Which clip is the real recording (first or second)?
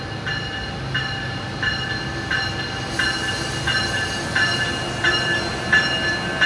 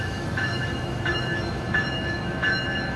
first